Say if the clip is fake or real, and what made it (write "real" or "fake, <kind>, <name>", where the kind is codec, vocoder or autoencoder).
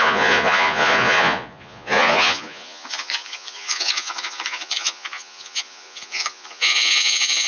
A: fake, vocoder, Vocos